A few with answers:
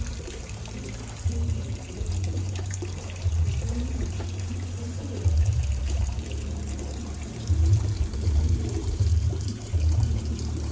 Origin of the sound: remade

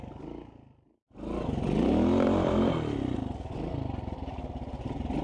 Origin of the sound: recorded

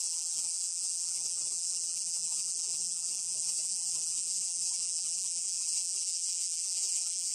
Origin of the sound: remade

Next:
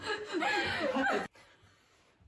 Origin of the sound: recorded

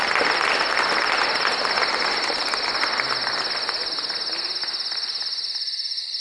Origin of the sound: recorded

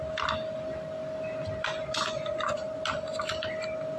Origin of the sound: recorded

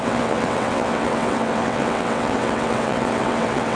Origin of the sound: remade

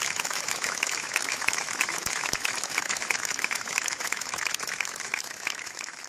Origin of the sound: remade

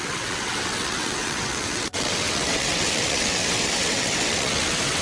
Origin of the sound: remade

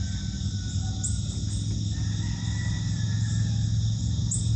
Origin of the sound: recorded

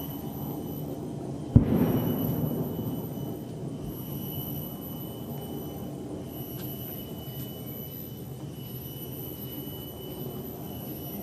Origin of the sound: recorded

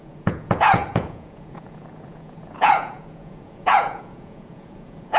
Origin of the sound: remade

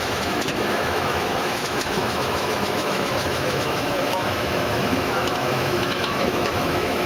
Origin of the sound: remade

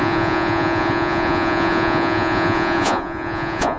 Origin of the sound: remade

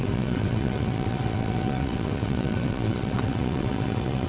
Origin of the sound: remade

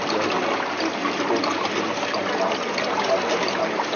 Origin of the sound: recorded